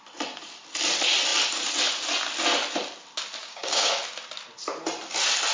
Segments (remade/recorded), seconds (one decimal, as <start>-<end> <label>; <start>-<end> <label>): 0.0-3.4 recorded; 3.4-3.9 remade; 3.9-5.5 recorded